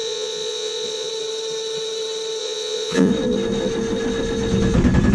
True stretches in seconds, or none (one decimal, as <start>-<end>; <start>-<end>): 1.1-2.4; 3.1-5.1